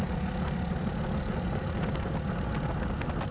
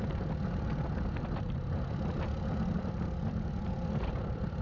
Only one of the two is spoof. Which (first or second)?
second